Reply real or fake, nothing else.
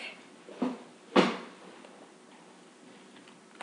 real